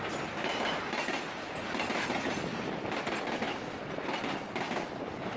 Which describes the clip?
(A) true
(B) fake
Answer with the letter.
A